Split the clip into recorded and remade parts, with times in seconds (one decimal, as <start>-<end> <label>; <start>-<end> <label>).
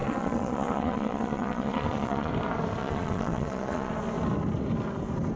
0.0-2.3 remade; 2.3-2.8 recorded; 2.8-3.9 remade; 3.9-5.4 recorded